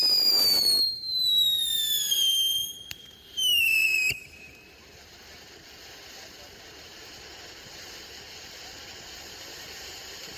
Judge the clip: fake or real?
fake